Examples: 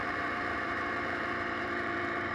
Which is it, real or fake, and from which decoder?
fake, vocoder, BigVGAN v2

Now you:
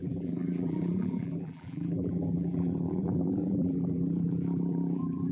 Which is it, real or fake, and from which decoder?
fake, vocoder, BigVGAN v2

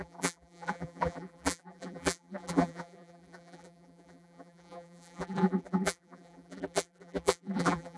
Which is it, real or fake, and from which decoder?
fake, vocoder, BigVGAN v2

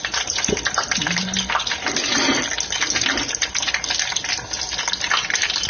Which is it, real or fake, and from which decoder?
real